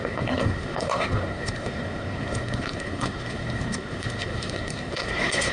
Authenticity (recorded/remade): remade